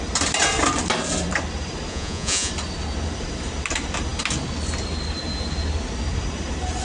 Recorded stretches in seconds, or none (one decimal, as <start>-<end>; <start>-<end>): 0.0-1.9; 2.5-6.8